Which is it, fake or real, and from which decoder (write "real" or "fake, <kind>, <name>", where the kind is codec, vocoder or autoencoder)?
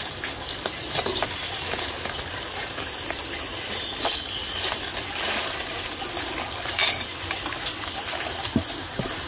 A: real